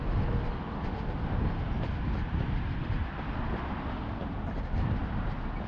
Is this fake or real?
real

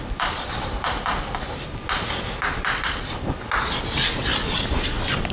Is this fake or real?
real